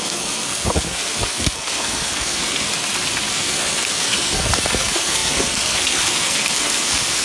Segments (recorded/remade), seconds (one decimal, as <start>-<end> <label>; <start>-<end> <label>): 0.0-2.7 remade; 2.7-3.3 recorded; 3.3-7.2 remade